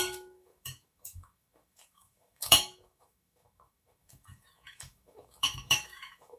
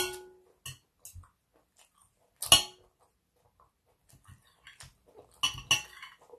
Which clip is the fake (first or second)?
first